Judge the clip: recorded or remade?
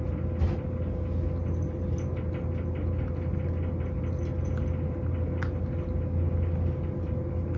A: recorded